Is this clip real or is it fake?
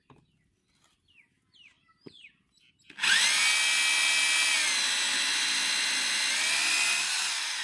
real